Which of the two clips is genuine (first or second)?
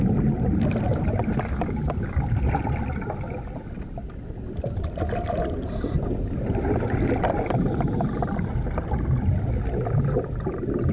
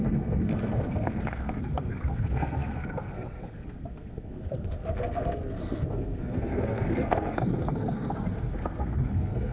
first